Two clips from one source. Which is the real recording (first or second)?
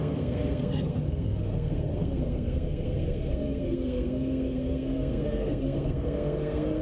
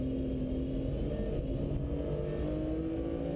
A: second